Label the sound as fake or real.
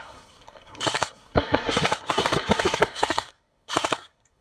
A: fake